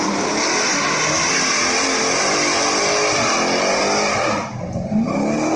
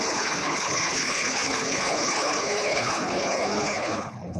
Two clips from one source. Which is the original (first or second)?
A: first